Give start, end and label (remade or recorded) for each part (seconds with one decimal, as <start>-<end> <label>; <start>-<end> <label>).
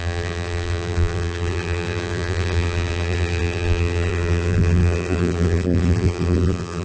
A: 0.0-6.8 remade